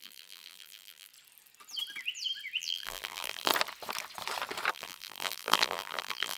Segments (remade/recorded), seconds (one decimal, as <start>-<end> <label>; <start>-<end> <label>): 0.0-1.1 remade; 1.1-2.6 recorded; 2.6-3.5 remade; 3.5-4.7 recorded; 4.7-6.4 remade